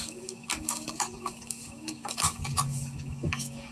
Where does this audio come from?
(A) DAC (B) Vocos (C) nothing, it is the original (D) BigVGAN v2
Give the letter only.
A